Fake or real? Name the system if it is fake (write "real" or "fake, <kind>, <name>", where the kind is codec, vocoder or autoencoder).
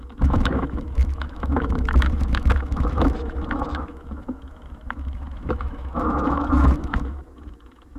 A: fake, autoencoder, DAC-VAE